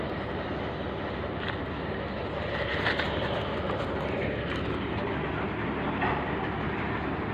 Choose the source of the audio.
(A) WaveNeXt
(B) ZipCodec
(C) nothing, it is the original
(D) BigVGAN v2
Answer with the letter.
C